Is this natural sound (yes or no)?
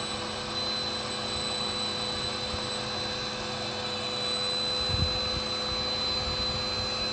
yes